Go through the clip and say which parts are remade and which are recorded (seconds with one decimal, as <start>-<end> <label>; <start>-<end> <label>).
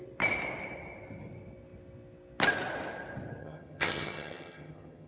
0.0-3.4 recorded; 3.4-5.1 remade